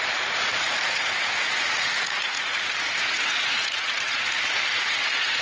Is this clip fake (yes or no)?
yes